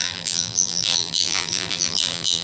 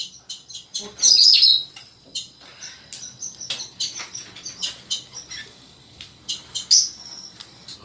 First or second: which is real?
second